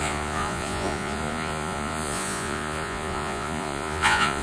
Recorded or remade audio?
remade